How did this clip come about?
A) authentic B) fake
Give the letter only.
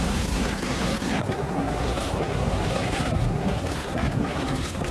B